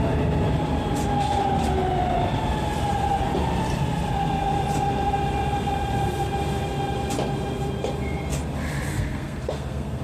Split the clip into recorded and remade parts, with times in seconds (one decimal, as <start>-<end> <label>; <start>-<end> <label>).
0.0-8.9 recorded; 8.9-10.0 remade